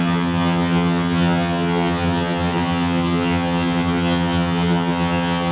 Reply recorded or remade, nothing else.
remade